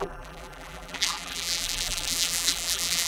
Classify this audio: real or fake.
fake